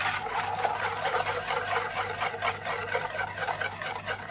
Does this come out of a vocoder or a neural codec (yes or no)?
no